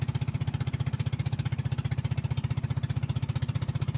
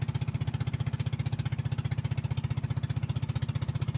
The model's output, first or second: first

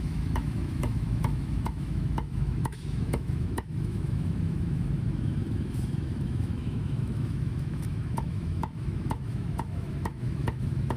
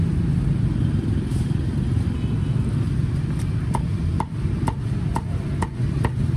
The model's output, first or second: first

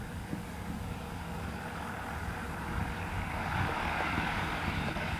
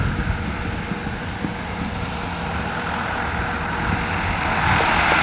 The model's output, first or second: first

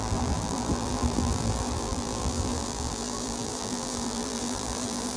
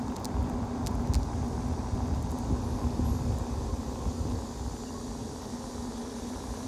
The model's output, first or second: first